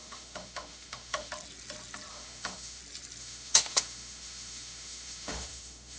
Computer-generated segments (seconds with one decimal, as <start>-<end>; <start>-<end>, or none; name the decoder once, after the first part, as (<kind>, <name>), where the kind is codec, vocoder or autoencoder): 0.0-1.3 (autoencoder, DAC-VAE); 2.1-2.8; 3.2-6.0